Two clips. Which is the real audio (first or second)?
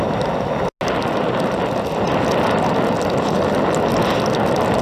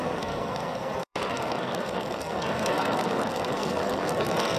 first